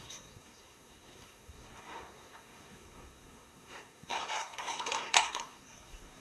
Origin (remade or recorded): remade